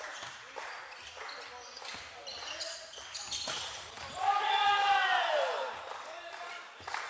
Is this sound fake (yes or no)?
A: no